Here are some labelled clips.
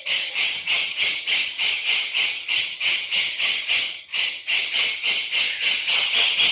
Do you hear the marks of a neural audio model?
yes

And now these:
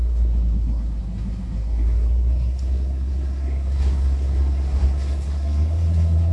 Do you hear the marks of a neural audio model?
yes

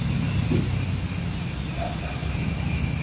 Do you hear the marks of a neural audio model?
no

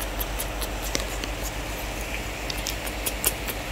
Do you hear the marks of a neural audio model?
no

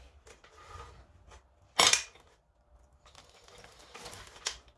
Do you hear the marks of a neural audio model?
no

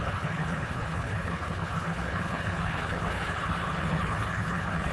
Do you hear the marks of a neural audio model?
yes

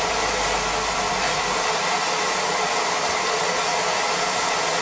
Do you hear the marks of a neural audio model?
no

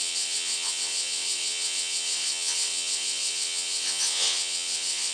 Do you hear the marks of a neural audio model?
yes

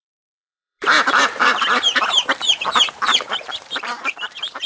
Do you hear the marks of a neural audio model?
yes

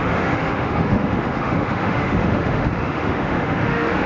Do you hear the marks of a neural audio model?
yes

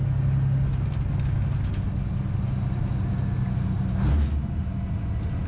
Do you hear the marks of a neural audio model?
no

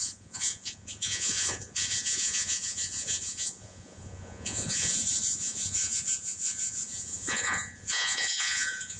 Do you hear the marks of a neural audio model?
yes